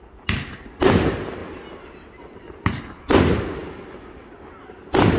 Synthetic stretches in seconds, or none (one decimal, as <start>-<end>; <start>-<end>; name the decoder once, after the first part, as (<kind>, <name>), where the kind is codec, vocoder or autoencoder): none